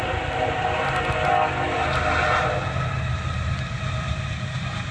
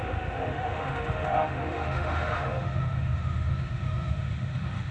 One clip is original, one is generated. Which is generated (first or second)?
second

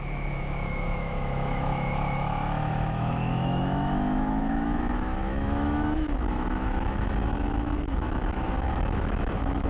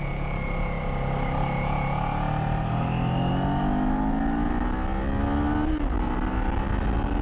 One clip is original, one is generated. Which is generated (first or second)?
first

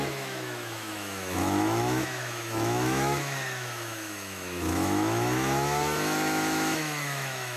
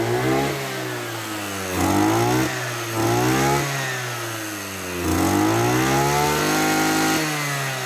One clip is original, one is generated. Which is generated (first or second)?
first